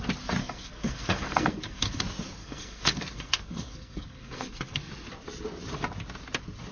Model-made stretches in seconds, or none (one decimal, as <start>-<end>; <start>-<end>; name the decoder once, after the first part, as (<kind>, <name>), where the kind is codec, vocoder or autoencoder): 0.4-2.0 (codec, SNAC); 2.4-4.9

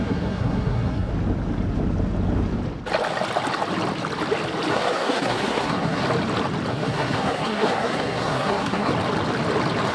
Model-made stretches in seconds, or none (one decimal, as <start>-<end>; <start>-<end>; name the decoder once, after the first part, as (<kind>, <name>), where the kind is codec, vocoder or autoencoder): 0.0-1.1 (codec, SNAC); 4.7-6.0; 6.7-8.9